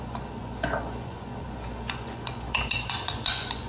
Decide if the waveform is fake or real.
fake